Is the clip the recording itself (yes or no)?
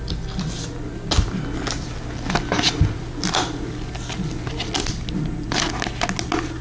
yes